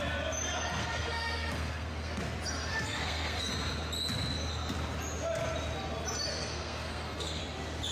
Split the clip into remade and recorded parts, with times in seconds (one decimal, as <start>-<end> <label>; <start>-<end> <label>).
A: 0.0-0.8 recorded; 0.8-2.2 remade; 2.2-2.7 recorded; 2.7-3.5 remade; 3.5-6.3 recorded; 6.3-7.4 remade; 7.4-7.9 recorded